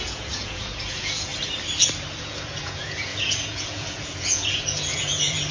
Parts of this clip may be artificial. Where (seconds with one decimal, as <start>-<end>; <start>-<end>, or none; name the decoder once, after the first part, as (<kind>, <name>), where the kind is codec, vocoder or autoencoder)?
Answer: 0.0-1.3 (vocoder, Vocos); 2.2-5.5